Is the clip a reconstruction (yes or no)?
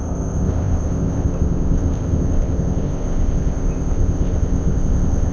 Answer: yes